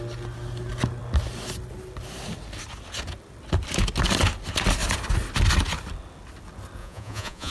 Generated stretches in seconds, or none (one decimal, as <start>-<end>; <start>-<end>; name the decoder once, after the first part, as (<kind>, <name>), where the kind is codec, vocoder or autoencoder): 6.8-7.5 (vocoder, Vocos)